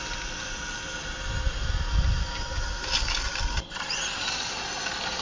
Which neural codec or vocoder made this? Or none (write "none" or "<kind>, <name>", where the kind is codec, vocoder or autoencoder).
none